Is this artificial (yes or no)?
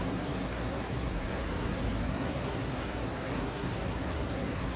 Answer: yes